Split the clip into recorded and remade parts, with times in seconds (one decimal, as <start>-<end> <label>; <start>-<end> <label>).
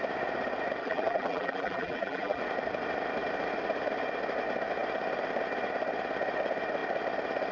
0.0-0.8 recorded; 0.8-2.4 remade; 2.4-7.5 recorded